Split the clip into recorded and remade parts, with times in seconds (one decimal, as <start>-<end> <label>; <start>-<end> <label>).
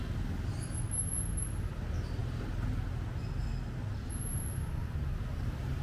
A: 0.0-4.8 recorded; 4.8-5.8 remade